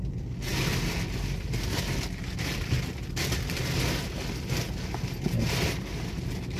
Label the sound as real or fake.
real